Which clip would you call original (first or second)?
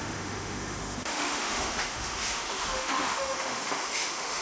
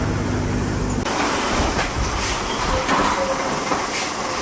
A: second